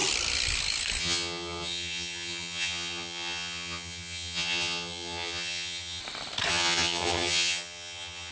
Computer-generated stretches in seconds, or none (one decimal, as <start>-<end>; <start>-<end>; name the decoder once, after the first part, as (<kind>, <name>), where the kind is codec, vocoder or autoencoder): 1.0-6.0 (vocoder, HiFi-GAN); 6.5-8.3